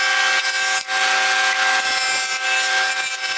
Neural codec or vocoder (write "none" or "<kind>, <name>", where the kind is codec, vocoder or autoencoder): none